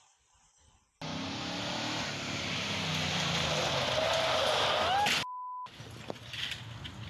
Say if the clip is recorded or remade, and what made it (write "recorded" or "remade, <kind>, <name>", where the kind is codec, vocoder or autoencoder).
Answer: recorded